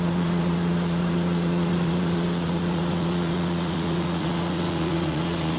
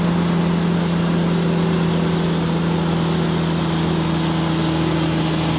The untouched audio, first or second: second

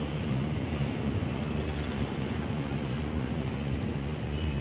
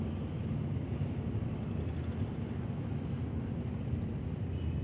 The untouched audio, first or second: second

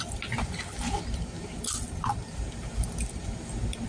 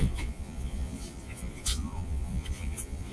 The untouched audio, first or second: first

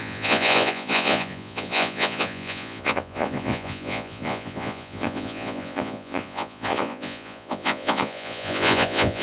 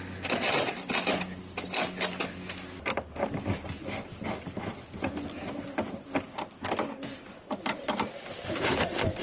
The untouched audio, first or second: second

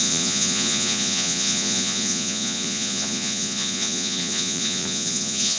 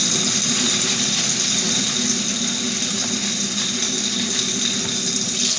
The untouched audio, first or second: second